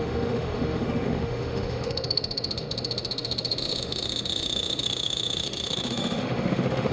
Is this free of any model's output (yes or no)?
no